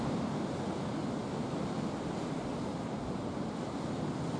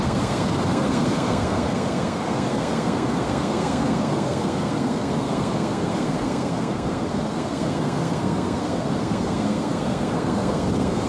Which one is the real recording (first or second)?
first